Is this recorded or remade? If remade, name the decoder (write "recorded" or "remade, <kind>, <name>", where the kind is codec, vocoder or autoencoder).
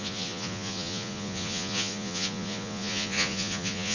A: remade, vocoder, Vocos